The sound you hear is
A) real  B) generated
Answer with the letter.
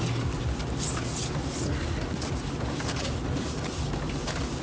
A